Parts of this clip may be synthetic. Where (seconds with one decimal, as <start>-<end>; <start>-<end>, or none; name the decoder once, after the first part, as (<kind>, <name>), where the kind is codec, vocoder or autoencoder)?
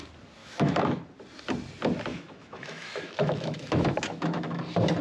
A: 0.4-1.1 (autoencoder, DAC-VAE); 2.1-4.6